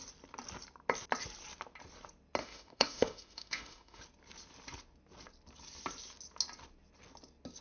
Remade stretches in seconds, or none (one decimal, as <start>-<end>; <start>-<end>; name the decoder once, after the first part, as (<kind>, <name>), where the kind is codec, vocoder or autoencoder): 2.4-4.0 (autoencoder, DAC-VAE)